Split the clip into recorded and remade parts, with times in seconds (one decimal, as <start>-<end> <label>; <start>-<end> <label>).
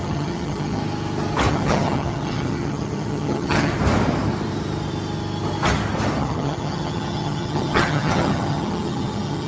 0.0-0.8 remade; 0.8-1.5 recorded; 1.5-3.7 remade; 3.7-6.2 recorded; 6.2-9.5 remade